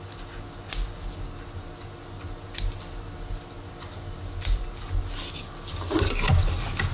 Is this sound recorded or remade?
recorded